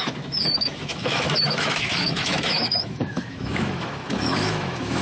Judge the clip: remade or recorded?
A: remade